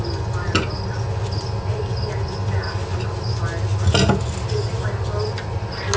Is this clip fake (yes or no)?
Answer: no